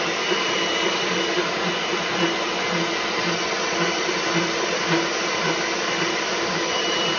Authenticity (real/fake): real